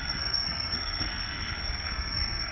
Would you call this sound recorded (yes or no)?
no